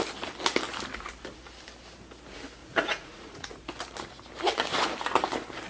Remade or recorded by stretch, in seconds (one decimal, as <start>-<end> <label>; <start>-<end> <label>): 0.0-2.6 recorded; 2.6-3.6 remade; 3.6-5.7 recorded